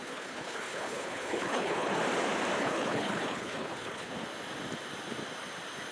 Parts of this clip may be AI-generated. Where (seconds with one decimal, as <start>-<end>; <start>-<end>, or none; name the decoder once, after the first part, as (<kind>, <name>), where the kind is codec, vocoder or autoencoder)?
0.0-2.0 (codec, HILCodec); 2.6-4.1